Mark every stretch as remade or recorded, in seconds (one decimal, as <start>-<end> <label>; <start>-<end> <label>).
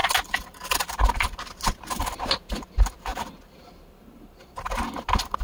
0.0-1.1 remade; 1.1-3.1 recorded; 3.1-3.7 remade; 3.7-5.4 recorded